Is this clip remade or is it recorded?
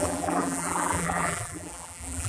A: remade